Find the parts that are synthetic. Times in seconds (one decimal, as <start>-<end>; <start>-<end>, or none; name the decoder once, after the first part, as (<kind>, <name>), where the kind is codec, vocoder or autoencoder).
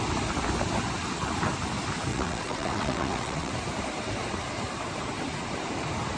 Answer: 2.1-3.5 (vocoder, WaveNeXt)